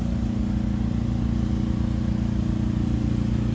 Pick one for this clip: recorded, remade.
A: recorded